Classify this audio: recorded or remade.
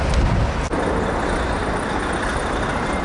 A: recorded